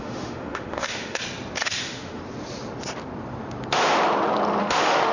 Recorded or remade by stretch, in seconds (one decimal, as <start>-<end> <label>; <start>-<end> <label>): 0.0-1.2 remade; 1.2-1.8 recorded; 1.8-2.2 remade; 2.2-4.6 recorded; 4.6-5.1 remade